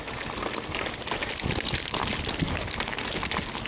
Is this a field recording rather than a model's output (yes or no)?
yes